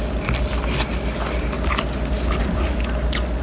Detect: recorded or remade recorded